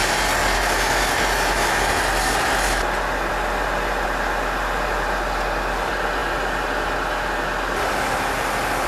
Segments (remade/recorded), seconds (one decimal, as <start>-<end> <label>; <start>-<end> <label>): 0.0-8.9 recorded